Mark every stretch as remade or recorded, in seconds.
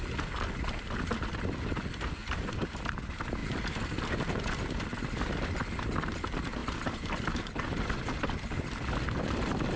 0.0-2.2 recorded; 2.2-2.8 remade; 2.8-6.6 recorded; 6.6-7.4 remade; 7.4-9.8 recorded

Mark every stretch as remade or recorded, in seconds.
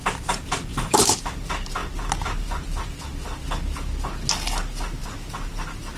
0.0-0.7 recorded; 0.7-1.2 remade; 1.2-6.0 recorded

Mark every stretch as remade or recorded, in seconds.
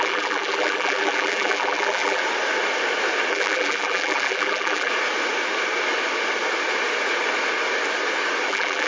0.0-2.2 remade; 2.2-3.3 recorded; 3.3-4.9 remade; 4.9-8.5 recorded; 8.5-8.9 remade